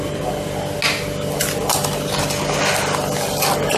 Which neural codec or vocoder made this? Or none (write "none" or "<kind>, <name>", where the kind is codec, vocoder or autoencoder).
none